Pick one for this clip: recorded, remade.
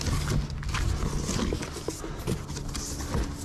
recorded